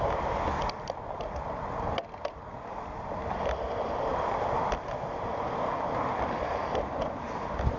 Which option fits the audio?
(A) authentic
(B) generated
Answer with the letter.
A